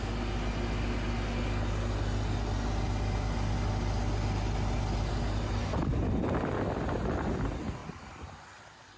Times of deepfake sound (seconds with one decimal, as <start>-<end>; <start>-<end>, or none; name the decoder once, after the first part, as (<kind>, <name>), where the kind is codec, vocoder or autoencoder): 7.8-9.0 (vocoder, BigVGAN v2)

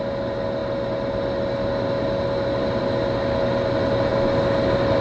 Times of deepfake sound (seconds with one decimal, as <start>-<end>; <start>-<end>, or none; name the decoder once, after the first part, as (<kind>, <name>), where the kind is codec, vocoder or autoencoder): none

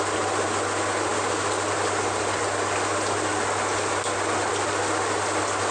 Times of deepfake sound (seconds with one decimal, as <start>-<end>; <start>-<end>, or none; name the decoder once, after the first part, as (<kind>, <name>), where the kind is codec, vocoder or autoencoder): 0.0-5.7 (vocoder, BigVGAN v2)

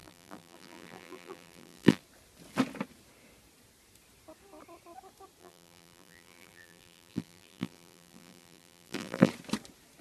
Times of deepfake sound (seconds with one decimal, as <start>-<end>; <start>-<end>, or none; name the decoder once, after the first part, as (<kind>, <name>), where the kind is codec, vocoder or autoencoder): 0.0-2.0 (vocoder, BigVGAN v2); 5.4-9.3

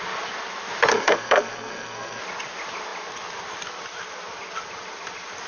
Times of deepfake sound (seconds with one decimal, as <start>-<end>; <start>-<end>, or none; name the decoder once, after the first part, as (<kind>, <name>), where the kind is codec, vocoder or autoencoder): 0.9-2.2 (codec, SNAC)

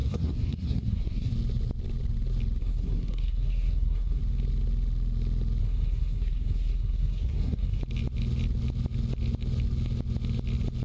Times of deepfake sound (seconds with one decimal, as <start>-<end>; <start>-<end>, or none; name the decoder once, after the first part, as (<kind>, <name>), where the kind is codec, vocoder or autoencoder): 0.0-1.3 (codec, SNAC); 2.6-4.2; 5.6-7.8